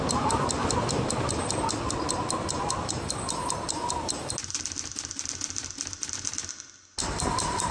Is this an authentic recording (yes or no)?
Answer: yes